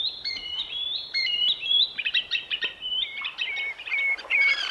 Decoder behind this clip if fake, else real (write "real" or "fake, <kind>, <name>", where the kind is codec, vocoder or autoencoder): fake, vocoder, BigVGAN v2